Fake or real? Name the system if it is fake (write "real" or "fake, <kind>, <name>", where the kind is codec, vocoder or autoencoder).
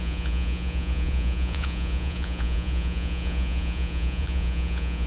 fake, vocoder, Vocos